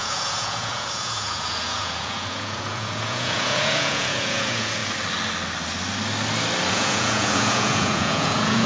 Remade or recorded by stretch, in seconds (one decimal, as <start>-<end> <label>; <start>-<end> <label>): 0.0-4.8 remade; 4.8-6.7 recorded; 6.7-8.7 remade